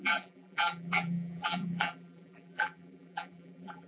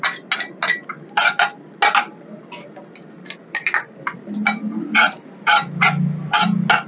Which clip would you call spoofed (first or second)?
first